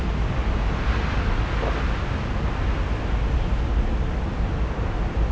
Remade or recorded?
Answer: recorded